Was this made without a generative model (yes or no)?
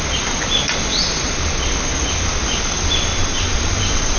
yes